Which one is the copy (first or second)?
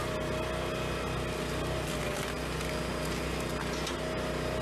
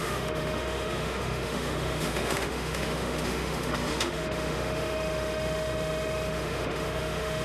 second